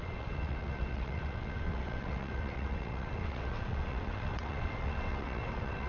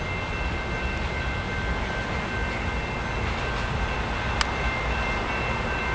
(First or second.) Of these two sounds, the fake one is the first